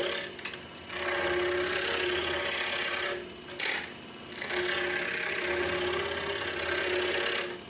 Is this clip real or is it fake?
real